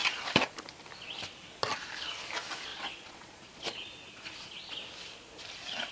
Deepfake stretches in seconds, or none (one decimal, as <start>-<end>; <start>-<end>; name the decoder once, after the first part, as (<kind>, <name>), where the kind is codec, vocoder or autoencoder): 2.7-4.7 (vocoder, Vocos)

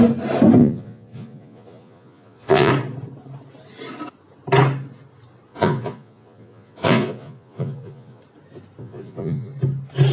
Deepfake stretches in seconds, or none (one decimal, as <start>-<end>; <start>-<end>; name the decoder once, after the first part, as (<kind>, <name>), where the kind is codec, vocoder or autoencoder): 0.6-2.7 (vocoder, Vocos); 5.5-8.2; 8.8-9.5

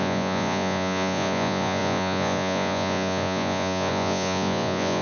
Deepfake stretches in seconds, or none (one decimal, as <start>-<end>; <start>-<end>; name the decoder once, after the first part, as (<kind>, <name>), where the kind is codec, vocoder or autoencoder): 0.0-5.0 (vocoder, Vocos)

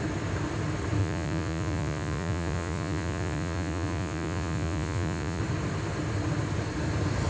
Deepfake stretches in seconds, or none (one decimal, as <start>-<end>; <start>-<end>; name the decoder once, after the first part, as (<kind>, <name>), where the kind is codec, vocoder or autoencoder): 1.0-5.4 (vocoder, Vocos)